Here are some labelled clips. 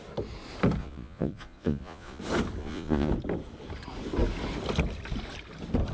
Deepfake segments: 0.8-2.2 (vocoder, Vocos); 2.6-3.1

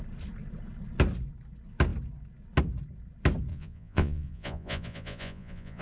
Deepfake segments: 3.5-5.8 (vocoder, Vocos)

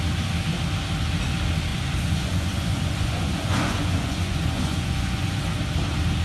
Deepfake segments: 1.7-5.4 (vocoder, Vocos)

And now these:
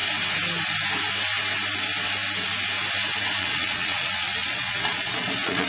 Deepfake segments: 3.4-5.7 (vocoder, Vocos)

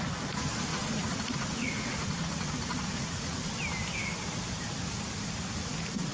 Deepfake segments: 0.7-3.5 (vocoder, Vocos)

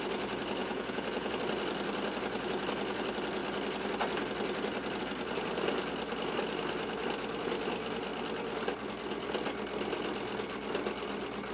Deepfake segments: 0.6-1.3 (vocoder, Vocos)

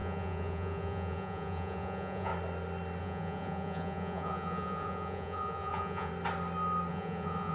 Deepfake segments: 0.0-2.3 (vocoder, Vocos); 3.0-6.1; 6.9-7.5